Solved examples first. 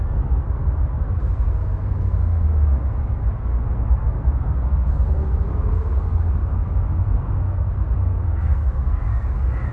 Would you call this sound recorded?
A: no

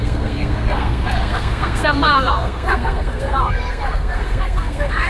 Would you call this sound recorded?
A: no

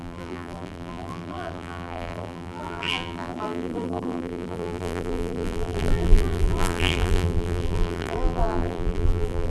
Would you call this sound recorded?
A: no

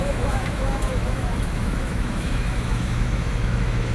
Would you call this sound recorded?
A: no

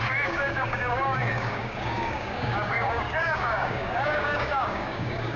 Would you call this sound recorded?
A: no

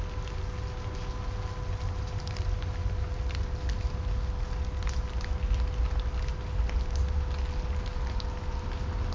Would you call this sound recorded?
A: yes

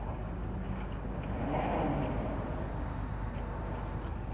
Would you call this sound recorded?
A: yes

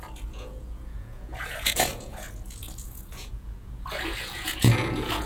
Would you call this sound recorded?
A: no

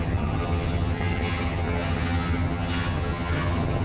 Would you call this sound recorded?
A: no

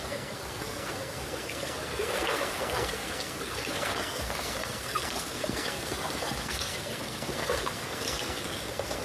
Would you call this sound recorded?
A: no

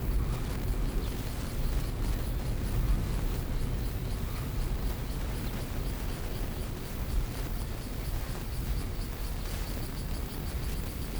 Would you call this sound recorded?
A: yes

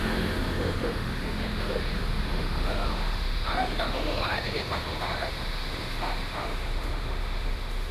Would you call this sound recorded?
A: no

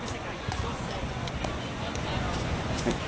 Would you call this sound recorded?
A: no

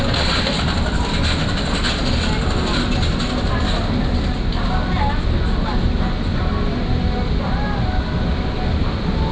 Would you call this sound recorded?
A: yes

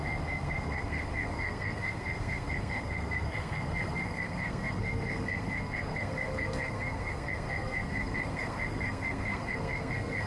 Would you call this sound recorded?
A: no